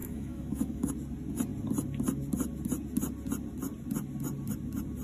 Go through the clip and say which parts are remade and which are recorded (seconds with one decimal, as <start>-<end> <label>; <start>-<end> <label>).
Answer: 0.0-0.9 remade; 0.9-5.0 recorded